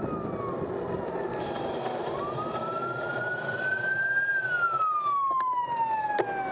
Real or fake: real